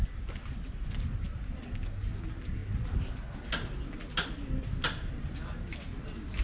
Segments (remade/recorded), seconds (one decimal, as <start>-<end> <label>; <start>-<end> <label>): 0.0-6.4 recorded